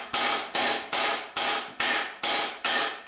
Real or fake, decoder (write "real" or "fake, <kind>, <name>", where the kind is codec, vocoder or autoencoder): real